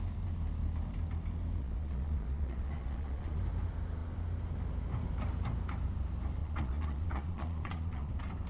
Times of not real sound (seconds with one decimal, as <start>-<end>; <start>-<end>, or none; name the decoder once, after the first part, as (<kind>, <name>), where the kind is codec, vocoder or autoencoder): 1.6-3.4 (vocoder, Vocos); 6.4-8.1